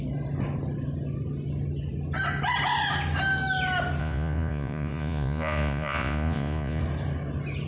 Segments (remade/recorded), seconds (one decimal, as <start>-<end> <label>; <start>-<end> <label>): 0.0-4.0 recorded; 4.0-6.8 remade; 6.8-7.7 recorded